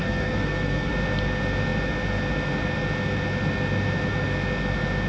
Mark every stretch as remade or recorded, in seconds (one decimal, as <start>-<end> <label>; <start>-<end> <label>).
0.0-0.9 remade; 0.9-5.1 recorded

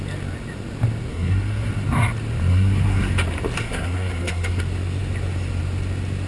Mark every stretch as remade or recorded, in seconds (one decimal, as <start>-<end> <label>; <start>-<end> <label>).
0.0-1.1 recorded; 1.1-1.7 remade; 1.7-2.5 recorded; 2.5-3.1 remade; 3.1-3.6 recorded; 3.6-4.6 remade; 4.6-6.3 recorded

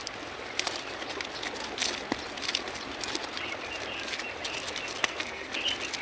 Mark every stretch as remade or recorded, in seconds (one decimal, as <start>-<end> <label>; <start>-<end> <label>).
0.0-5.0 recorded; 5.0-5.5 remade; 5.5-6.0 recorded

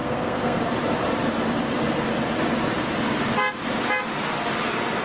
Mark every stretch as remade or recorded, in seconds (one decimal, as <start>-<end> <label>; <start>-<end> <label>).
0.0-0.6 remade; 0.6-5.0 recorded

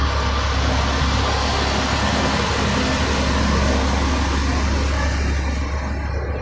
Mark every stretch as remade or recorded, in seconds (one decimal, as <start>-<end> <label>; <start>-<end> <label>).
0.0-6.4 recorded